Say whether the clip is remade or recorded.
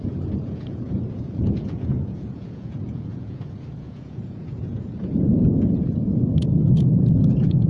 remade